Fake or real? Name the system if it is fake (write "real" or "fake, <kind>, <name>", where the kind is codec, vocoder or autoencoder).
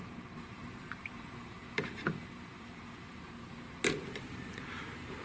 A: fake, vocoder, BigVGAN v2